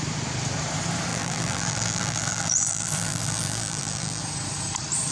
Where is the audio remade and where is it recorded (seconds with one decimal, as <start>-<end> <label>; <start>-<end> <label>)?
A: 0.0-1.1 recorded; 1.1-4.2 remade; 4.2-5.1 recorded